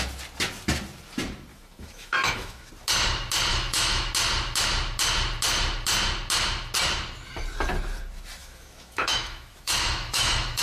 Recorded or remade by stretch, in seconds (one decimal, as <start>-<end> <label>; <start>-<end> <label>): 0.0-1.5 recorded; 1.5-2.7 remade; 2.7-3.5 recorded; 3.5-4.1 remade; 4.1-8.4 recorded; 8.4-10.6 remade